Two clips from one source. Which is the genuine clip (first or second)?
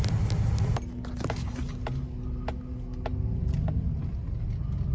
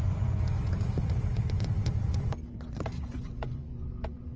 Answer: first